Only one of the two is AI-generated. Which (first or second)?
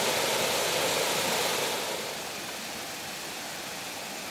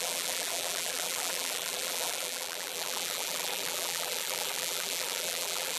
second